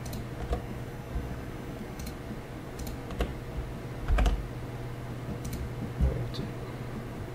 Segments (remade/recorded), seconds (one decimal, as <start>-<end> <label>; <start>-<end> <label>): 0.0-0.6 recorded; 0.6-2.1 remade; 2.1-7.3 recorded

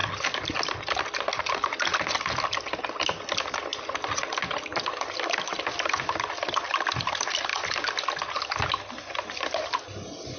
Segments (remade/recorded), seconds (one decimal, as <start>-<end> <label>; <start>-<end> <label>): 0.0-10.4 recorded

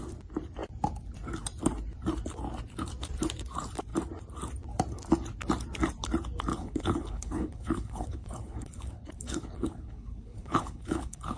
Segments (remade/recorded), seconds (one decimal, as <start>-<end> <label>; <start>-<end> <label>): 0.0-6.5 recorded; 6.5-11.4 remade

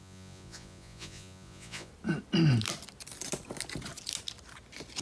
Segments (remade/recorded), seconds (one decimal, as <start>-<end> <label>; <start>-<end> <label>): 0.0-1.9 remade; 1.9-5.0 recorded

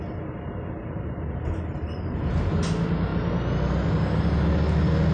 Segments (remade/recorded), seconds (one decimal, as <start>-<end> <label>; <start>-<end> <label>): 0.0-0.8 recorded; 0.8-2.2 remade; 2.2-5.1 recorded

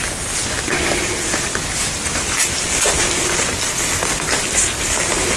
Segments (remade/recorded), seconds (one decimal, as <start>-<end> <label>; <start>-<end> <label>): 0.0-5.4 recorded

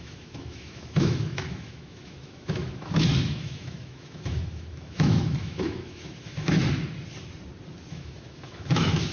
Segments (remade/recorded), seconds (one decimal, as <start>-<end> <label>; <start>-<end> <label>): 0.0-6.6 remade; 6.6-7.9 recorded; 7.9-9.1 remade